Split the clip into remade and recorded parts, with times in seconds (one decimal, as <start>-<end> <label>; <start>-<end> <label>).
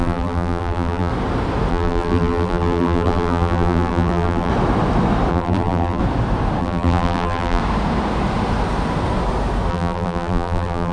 0.0-1.1 remade; 1.1-1.7 recorded; 1.7-4.5 remade; 4.5-5.3 recorded; 5.3-6.0 remade; 6.0-6.6 recorded; 6.6-7.6 remade; 7.6-9.7 recorded; 9.7-10.9 remade